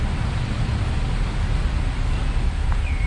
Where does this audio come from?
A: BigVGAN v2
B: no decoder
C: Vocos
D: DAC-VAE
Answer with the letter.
B